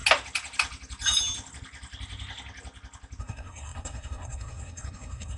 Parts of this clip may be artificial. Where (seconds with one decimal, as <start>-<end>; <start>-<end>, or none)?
3.2-5.4